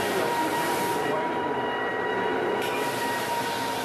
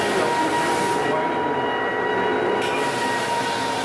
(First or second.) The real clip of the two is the second